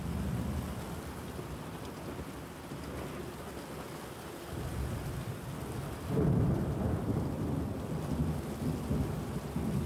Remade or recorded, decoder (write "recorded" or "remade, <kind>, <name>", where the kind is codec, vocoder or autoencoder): recorded